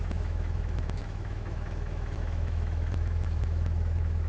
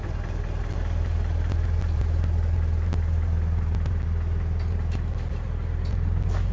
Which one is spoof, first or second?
first